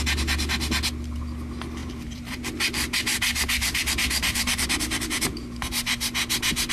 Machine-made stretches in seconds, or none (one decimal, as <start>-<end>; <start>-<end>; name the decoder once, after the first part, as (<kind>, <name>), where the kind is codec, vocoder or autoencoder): 1.8-2.4 (vocoder, BigVGAN v2); 3.1-5.7

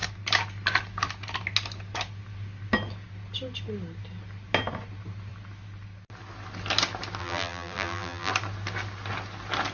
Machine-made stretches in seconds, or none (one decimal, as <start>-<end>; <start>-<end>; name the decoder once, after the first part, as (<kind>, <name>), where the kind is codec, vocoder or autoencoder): 7.2-8.3 (vocoder, BigVGAN v2)

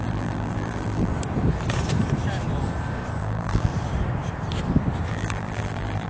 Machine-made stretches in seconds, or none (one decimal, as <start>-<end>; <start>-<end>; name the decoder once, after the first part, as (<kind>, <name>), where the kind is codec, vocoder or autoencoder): 0.0-1.1 (vocoder, BigVGAN v2); 3.2-3.7; 5.1-6.1

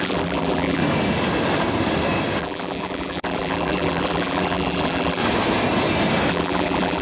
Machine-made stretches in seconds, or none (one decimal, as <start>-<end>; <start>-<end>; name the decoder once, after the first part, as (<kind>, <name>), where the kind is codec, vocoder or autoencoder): 0.0-0.8 (vocoder, BigVGAN v2); 2.4-5.2; 6.3-7.0